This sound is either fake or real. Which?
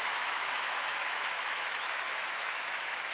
fake